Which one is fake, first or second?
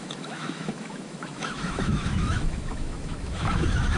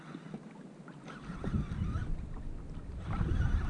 first